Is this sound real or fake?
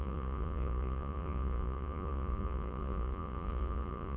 fake